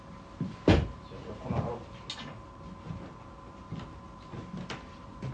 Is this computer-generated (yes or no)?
no